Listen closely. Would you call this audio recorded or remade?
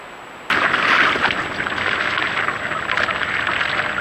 recorded